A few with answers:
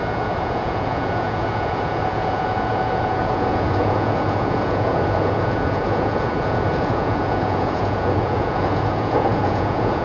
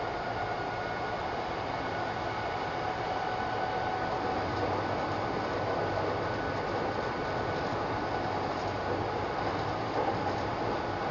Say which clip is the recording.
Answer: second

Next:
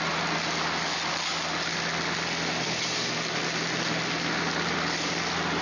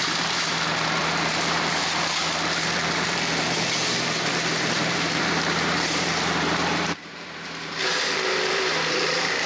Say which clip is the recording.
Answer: first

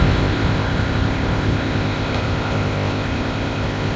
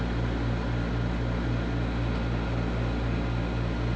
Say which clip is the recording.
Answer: second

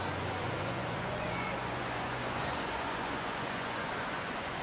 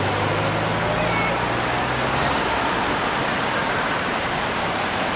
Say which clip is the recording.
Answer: second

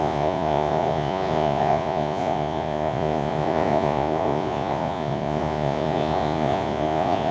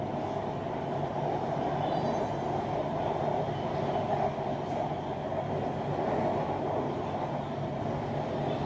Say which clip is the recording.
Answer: second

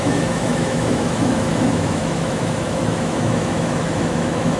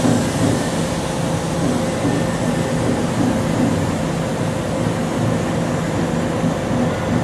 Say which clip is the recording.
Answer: second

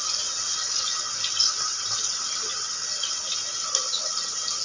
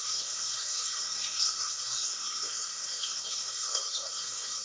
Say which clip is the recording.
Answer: first